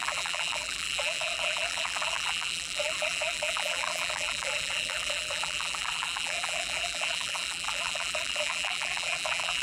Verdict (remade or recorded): remade